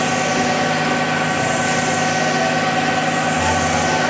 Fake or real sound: real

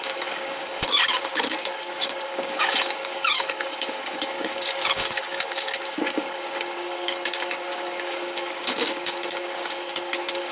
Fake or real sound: fake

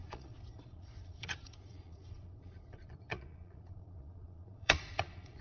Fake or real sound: fake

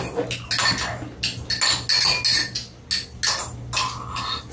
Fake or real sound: real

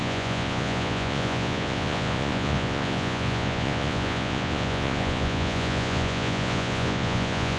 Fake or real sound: fake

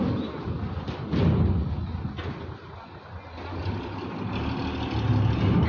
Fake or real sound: real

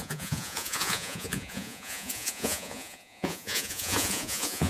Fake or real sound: fake